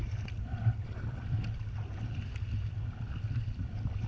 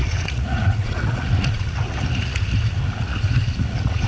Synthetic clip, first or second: second